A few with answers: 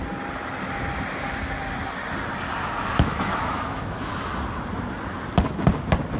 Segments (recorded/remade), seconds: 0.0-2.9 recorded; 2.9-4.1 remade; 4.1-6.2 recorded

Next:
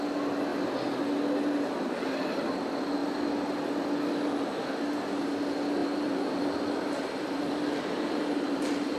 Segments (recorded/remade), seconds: 0.0-5.8 recorded; 5.8-9.0 remade

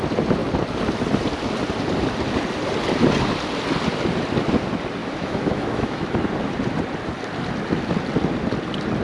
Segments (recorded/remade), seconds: 0.0-5.0 recorded; 5.0-6.1 remade; 6.1-9.0 recorded

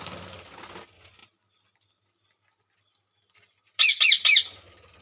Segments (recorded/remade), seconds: 0.0-5.0 recorded

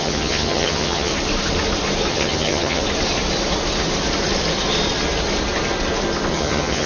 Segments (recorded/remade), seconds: 0.0-1.1 remade; 1.1-2.1 recorded; 2.1-2.8 remade; 2.8-6.3 recorded; 6.3-6.9 remade

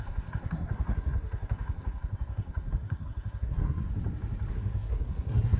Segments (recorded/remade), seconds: 0.0-3.9 remade; 3.9-4.5 recorded; 4.5-5.6 remade